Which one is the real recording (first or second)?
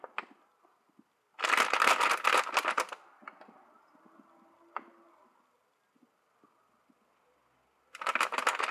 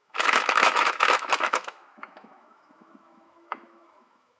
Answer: first